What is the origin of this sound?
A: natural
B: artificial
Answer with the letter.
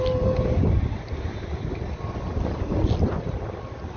A